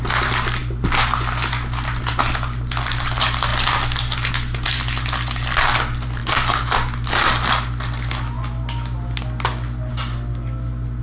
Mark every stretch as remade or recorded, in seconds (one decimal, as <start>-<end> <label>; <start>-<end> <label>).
0.0-11.0 recorded